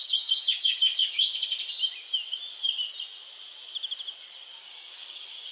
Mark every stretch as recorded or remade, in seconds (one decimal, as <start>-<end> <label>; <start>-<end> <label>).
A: 0.0-1.3 remade; 1.3-4.6 recorded; 4.6-5.5 remade